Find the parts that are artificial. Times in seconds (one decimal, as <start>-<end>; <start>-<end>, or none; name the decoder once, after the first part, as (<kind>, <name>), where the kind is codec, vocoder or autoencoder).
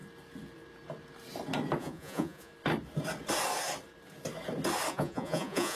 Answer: 1.8-2.5 (vocoder, Vocos); 4.9-5.8